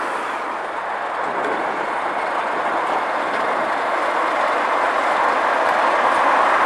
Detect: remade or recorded recorded